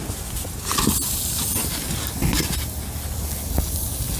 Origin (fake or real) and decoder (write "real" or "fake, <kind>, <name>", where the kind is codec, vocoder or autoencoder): real